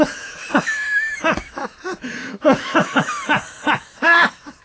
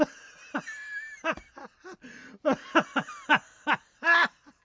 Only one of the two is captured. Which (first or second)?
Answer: second